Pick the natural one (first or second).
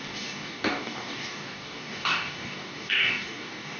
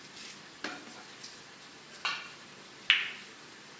second